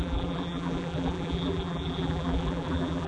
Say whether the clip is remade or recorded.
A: remade